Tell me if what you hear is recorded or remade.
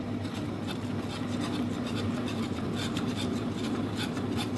recorded